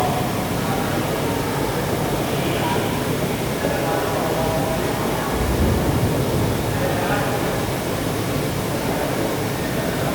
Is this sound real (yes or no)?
yes